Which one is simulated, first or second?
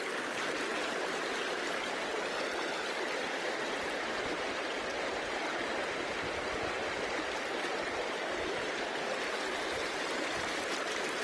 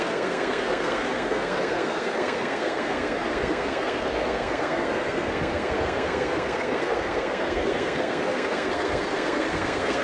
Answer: second